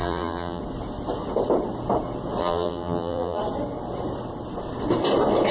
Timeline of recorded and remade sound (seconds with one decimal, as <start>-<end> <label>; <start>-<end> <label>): 0.0-0.6 remade; 0.6-2.4 recorded; 2.4-3.4 remade; 3.4-5.5 recorded